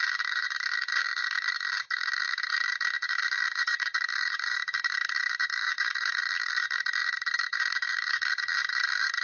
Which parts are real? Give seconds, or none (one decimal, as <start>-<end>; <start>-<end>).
none